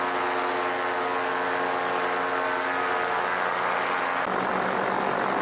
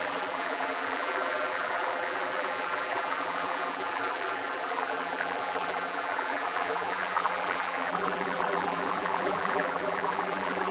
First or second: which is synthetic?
second